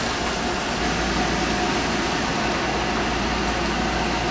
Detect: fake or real real